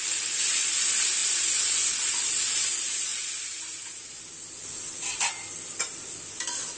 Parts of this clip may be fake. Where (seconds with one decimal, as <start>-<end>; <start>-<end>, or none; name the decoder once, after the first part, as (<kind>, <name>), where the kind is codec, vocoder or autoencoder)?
none